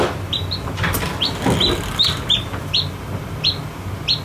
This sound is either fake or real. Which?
real